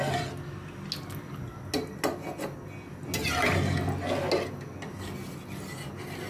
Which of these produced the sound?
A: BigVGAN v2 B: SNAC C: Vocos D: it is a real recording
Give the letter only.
D